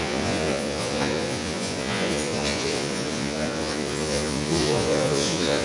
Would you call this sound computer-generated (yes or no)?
yes